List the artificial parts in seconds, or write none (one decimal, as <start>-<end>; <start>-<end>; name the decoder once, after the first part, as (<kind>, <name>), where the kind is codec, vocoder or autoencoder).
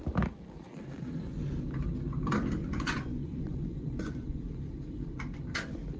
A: 2.7-4.4 (vocoder, Vocos)